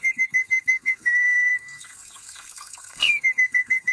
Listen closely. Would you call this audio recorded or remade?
remade